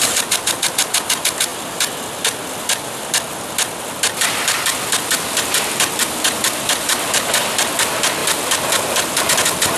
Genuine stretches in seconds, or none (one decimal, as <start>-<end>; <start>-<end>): 0.0-9.8

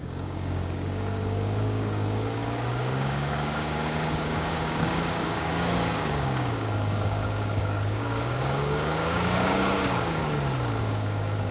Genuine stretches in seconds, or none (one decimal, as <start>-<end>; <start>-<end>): 10.2-10.8

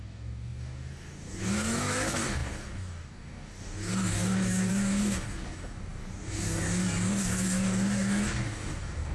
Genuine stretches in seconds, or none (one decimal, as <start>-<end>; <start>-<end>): none

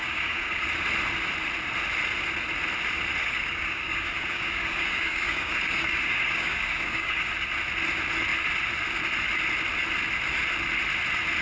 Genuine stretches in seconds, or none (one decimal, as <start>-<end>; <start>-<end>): 0.7-3.2; 7.3-11.4

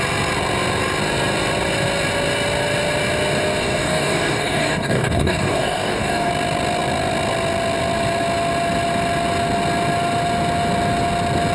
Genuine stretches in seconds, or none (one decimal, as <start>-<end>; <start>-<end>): 0.0-3.6; 6.3-11.5